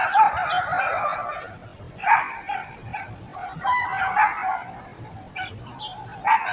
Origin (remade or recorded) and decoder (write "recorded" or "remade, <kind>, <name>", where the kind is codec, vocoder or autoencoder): recorded